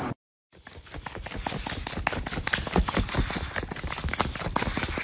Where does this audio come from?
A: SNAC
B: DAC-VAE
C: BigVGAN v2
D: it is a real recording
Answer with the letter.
D